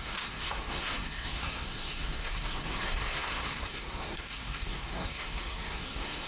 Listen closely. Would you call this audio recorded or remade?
remade